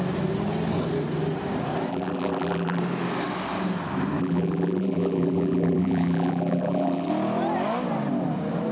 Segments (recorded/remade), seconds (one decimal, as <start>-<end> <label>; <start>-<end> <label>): 0.0-1.9 recorded; 1.9-2.8 remade; 2.8-4.2 recorded; 4.2-7.1 remade; 7.1-8.7 recorded